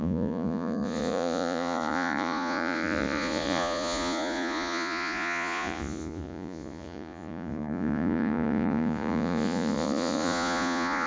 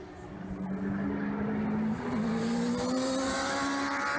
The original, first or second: second